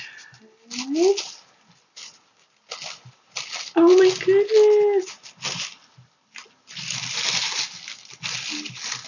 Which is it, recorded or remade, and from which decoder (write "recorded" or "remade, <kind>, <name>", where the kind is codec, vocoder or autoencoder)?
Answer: recorded